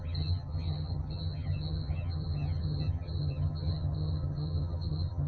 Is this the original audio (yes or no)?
no